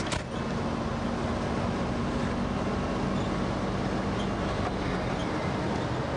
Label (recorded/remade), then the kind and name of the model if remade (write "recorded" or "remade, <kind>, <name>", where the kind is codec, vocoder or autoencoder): recorded